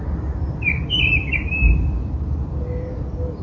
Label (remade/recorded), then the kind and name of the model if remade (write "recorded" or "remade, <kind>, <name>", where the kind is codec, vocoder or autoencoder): recorded